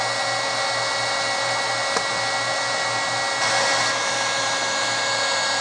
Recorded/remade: recorded